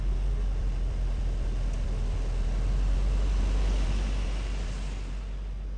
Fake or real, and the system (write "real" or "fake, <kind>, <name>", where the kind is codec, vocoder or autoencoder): real